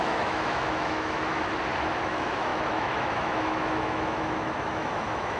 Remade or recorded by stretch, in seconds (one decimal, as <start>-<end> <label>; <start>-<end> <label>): 0.0-1.3 remade; 1.3-2.0 recorded; 2.0-5.4 remade